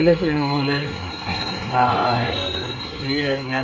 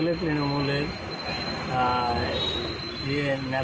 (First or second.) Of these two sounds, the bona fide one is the second